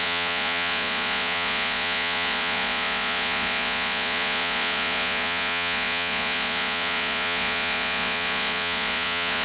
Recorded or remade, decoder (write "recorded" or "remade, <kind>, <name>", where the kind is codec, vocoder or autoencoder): remade, vocoder, Vocos